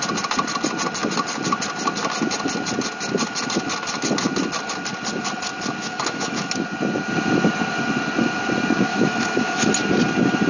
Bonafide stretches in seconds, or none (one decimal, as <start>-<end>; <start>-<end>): 0.0-5.8; 6.5-8.9; 9.7-10.5